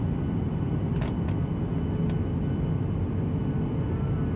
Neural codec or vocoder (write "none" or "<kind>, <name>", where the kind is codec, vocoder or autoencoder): none